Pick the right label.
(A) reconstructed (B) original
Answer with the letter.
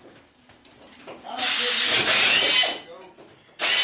B